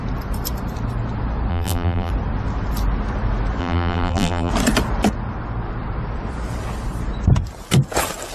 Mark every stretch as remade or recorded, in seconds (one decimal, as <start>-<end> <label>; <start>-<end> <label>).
0.0-1.5 recorded; 1.5-2.1 remade; 2.1-3.6 recorded; 3.6-4.5 remade; 4.5-8.3 recorded